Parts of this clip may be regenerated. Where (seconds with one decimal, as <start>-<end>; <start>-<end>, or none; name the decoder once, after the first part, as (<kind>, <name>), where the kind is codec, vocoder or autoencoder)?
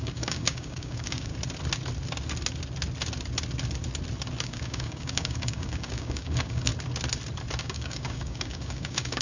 0.0-1.3 (codec, DAC); 4.4-6.7; 7.6-9.2